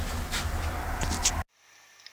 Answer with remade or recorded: recorded